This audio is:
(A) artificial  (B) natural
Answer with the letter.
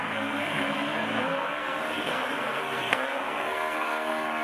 A